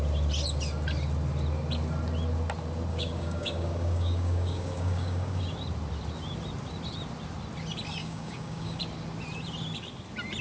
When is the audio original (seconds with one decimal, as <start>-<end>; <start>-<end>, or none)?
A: 0.0-2.9; 5.4-8.0; 8.8-10.4